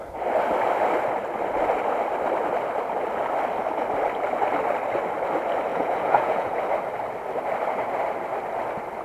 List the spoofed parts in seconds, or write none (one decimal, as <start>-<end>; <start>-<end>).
5.7-6.6